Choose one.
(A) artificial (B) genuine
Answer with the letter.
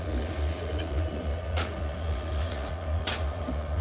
A